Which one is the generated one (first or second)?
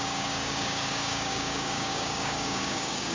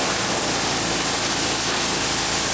first